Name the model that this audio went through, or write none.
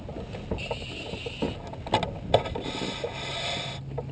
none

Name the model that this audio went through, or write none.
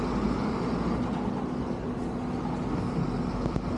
none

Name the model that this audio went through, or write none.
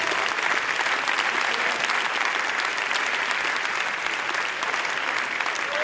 none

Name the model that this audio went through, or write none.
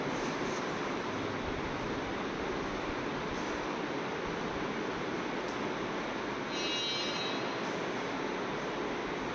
none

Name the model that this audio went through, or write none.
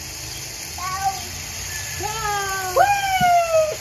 none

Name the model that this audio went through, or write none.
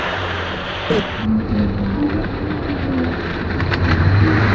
vocoder, BigVGAN v2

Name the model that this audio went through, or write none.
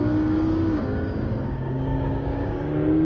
codec, DAC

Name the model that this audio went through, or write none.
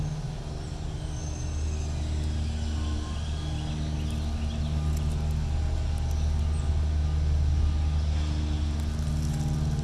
none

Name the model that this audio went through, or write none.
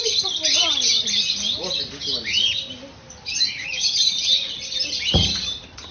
none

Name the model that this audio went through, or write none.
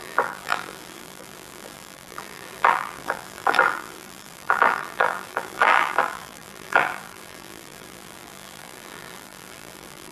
vocoder, BigVGAN v2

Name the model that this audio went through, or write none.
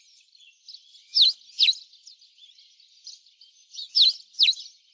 none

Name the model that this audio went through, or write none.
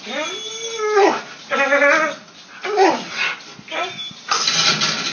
none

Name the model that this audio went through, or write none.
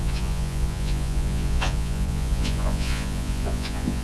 vocoder, Vocos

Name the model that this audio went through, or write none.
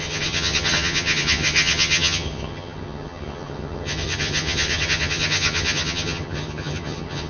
vocoder, HiFi-GAN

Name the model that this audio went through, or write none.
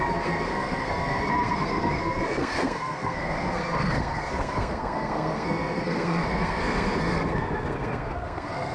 codec, SNAC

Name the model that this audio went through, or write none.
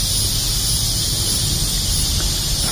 none